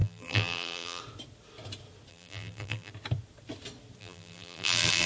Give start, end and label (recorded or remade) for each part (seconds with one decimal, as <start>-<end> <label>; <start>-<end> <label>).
0.0-1.0 remade; 1.0-2.1 recorded; 2.1-2.9 remade; 2.9-4.0 recorded; 4.0-5.1 remade